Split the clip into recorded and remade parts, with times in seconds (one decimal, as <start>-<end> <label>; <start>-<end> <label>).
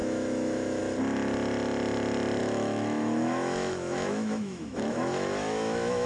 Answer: 0.0-0.8 remade; 0.8-2.4 recorded; 2.4-6.1 remade